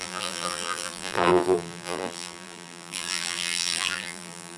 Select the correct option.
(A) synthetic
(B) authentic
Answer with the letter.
A